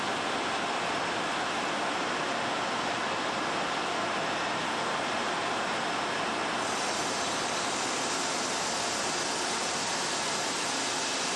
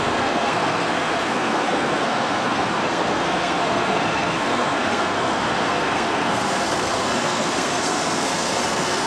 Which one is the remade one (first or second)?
second